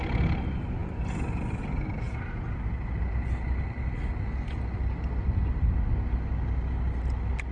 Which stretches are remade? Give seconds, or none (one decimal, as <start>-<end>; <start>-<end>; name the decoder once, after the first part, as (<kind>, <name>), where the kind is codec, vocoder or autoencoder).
none